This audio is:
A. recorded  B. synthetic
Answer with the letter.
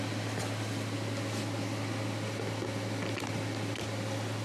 A